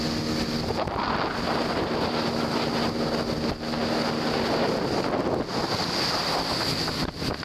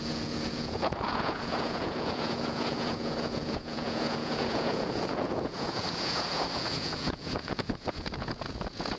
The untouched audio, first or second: first